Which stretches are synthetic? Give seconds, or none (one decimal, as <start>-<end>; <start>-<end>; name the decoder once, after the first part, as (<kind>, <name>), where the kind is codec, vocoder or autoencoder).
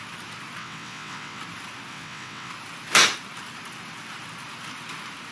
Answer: 0.6-1.4 (vocoder, WaveNeXt); 1.9-2.5